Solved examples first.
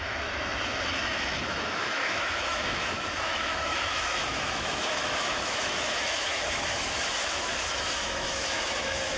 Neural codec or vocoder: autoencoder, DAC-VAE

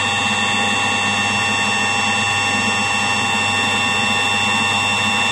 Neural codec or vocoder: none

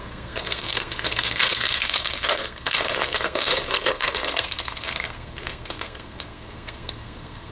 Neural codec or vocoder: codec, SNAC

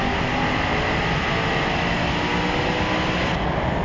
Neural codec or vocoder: none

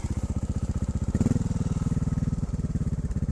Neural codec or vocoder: vocoder, BigVGAN v2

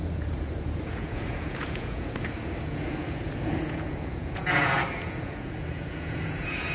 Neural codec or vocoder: vocoder, Vocos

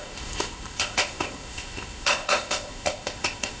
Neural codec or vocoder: codec, ZipCodec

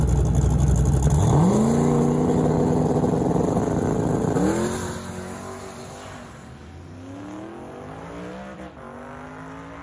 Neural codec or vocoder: none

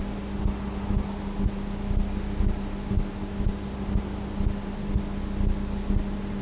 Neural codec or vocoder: none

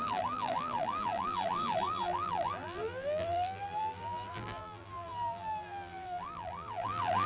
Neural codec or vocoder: vocoder, BigVGAN v2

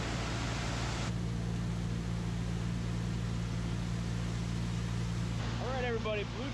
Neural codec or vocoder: none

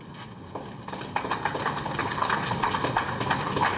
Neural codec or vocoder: none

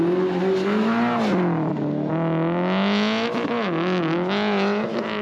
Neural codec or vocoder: none